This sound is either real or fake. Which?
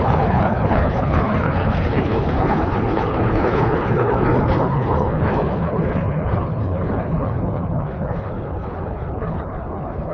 fake